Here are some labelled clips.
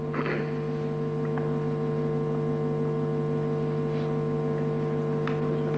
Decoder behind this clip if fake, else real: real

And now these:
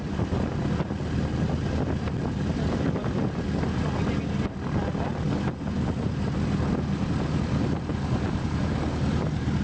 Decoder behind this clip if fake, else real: real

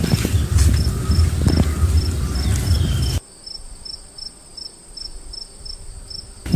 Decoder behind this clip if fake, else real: real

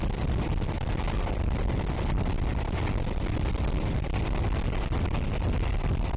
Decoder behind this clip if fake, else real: real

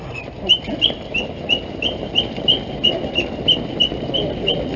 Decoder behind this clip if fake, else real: real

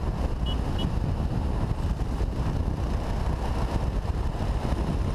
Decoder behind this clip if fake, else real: real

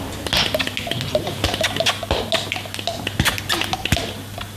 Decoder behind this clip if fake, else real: real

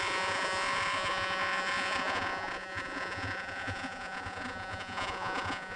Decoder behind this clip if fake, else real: fake, vocoder, Vocos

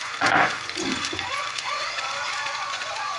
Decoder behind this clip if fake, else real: fake, vocoder, Vocos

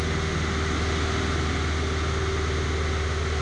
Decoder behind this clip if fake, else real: real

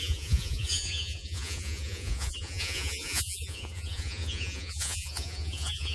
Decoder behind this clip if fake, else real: fake, vocoder, Vocos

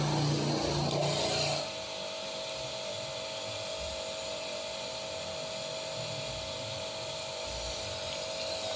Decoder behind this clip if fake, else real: real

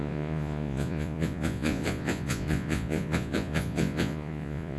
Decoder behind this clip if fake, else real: fake, vocoder, Vocos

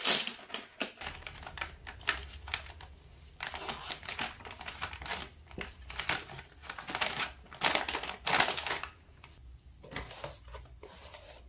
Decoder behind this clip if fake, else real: real